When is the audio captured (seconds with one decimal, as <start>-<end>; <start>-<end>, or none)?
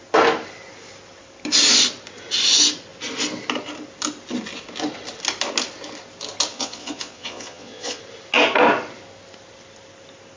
0.0-6.5; 8.0-10.4